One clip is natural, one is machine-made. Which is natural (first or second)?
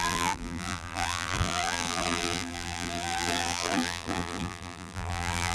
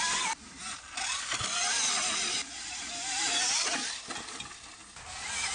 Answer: second